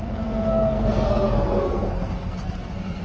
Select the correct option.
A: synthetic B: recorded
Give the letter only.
A